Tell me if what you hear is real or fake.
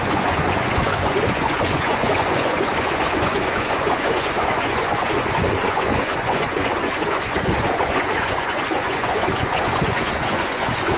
fake